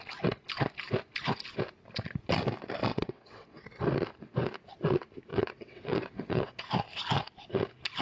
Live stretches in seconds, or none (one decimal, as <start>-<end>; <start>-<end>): 0.0-2.9; 3.8-5.3; 6.6-8.0